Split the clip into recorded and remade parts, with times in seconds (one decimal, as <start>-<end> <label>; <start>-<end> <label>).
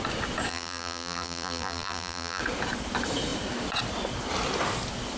0.0-0.5 recorded; 0.5-2.4 remade; 2.4-5.2 recorded